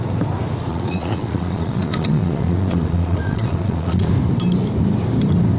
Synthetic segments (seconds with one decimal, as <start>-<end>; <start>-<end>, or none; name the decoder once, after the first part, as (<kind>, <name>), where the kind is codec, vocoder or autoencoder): 0.7-4.1 (vocoder, Vocos)